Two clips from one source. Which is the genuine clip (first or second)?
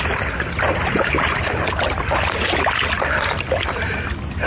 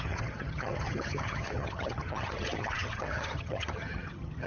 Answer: first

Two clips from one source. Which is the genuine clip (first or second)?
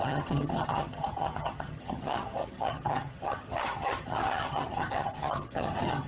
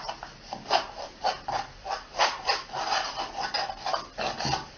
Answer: second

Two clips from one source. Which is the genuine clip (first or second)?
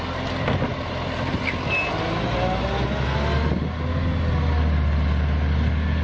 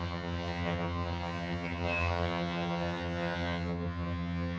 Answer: first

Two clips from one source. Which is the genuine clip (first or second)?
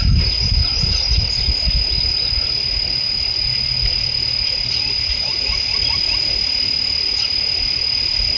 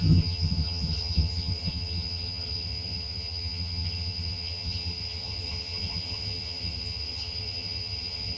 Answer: first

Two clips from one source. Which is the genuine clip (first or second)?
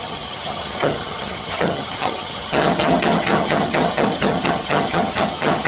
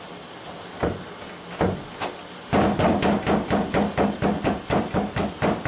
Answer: second